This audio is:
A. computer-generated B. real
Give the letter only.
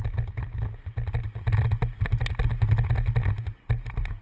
B